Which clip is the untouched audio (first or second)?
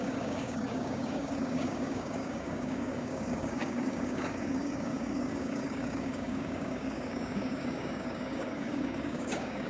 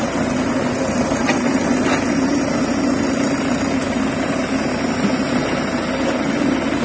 second